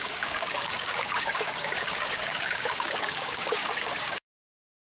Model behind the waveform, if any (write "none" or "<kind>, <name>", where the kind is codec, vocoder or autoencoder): codec, DAC